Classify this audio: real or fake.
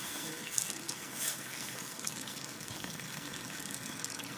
fake